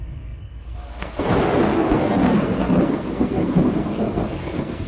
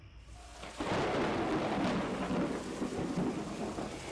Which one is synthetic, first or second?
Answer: first